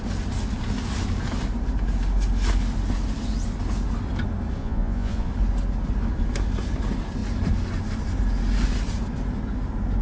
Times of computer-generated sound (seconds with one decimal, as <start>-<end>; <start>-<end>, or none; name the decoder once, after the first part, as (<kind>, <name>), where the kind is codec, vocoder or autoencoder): 4.6-5.3 (vocoder, Vocos)